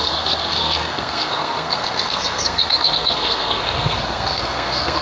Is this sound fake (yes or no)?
yes